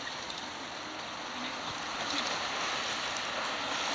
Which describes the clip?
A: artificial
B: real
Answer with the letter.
B